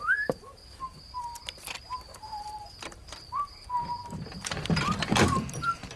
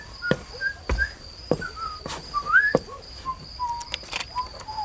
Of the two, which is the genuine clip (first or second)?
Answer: second